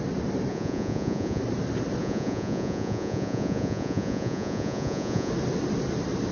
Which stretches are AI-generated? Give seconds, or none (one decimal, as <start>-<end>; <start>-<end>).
0.5-1.4; 2.0-5.3